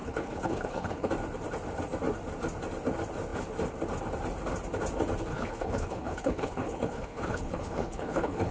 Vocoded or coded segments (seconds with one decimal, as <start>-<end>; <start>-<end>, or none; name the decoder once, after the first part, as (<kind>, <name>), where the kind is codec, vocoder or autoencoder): 0.0-1.1 (codec, HILCodec); 5.3-8.5